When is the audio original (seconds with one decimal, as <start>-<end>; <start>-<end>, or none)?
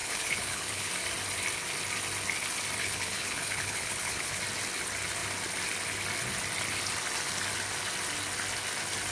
0.9-2.8; 4.4-9.1